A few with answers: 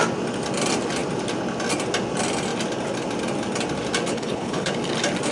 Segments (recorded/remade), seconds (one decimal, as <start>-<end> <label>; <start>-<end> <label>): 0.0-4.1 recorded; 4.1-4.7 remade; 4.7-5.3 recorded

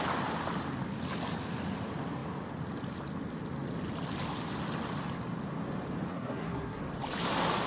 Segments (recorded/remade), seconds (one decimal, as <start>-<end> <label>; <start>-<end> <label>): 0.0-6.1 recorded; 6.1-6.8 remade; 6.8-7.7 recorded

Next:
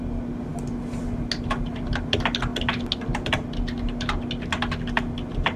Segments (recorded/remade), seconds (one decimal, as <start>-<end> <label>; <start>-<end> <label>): 0.0-5.6 recorded

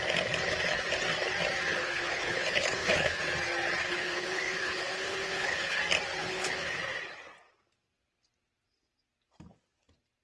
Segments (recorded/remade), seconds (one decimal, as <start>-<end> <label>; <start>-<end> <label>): 0.0-1.8 recorded; 1.8-3.2 remade; 3.2-3.8 recorded; 3.8-5.8 remade; 5.8-6.2 recorded; 6.2-6.8 remade; 6.8-10.2 recorded

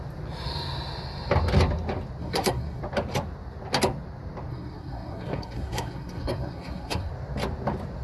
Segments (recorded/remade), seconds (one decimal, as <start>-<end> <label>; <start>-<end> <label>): 0.0-2.2 recorded; 2.2-2.8 remade; 2.8-4.5 recorded; 4.5-7.1 remade; 7.1-8.0 recorded

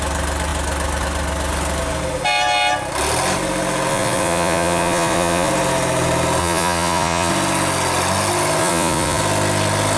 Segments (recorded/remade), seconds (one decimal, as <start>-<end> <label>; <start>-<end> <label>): 0.0-3.9 recorded; 3.9-5.5 remade; 5.5-6.4 recorded; 6.4-7.3 remade; 7.3-8.6 recorded; 8.6-9.2 remade; 9.2-10.0 recorded